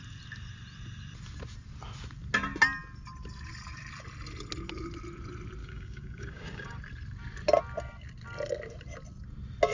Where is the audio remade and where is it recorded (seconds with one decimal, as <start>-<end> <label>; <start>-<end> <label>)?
0.0-5.6 recorded; 5.6-6.8 remade; 6.8-9.7 recorded